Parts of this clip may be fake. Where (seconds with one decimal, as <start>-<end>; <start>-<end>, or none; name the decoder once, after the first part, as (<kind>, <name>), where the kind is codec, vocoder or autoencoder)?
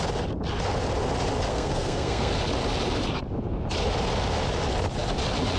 1.5-2.3 (codec, SNAC)